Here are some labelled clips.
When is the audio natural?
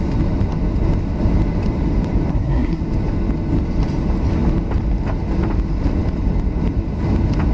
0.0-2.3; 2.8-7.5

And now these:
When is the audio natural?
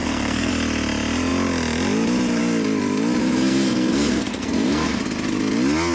0.5-3.2; 5.0-5.9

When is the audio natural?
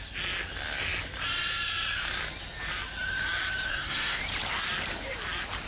0.0-3.7; 4.2-5.7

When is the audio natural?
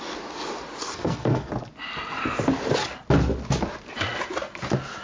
0.0-0.8; 1.5-5.0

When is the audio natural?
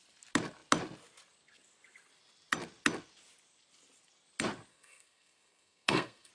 0.0-4.7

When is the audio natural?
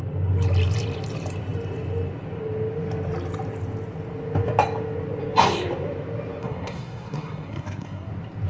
0.0-6.4; 8.1-8.5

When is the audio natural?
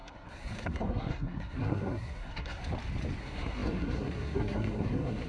2.6-3.2